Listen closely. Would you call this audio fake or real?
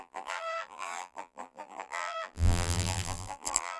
fake